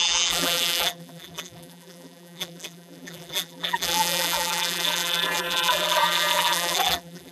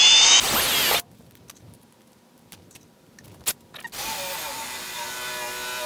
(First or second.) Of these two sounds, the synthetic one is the first